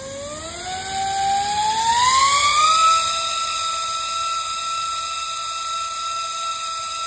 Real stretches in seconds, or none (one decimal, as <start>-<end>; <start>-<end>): 0.0-7.1